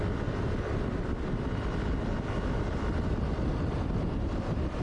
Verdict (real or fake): real